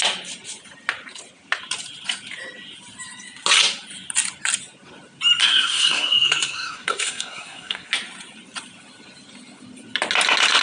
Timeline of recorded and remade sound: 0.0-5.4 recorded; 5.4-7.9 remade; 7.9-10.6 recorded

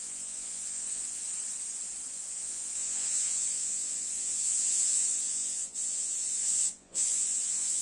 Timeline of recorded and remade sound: 0.0-1.2 remade; 1.2-2.1 recorded; 2.1-7.8 remade

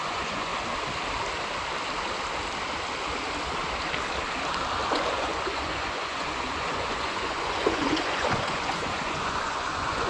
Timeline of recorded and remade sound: 0.0-0.5 remade; 0.5-4.9 recorded; 4.9-10.1 remade

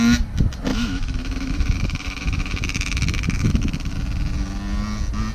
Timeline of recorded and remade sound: 0.0-0.7 recorded; 0.7-3.9 remade; 3.9-5.3 recorded

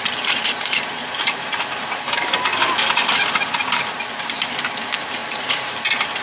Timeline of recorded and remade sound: 0.0-2.5 remade; 2.5-3.6 recorded; 3.6-6.2 remade

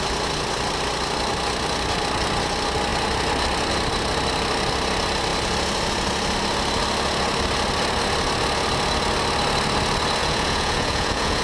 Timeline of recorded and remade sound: 0.0-10.2 recorded; 10.2-11.4 remade